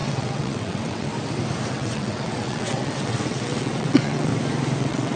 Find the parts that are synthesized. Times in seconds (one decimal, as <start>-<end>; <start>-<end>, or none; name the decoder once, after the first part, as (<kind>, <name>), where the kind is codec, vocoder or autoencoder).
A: 0.0-1.1 (vocoder, WaveNeXt); 1.7-4.3; 4.8-5.2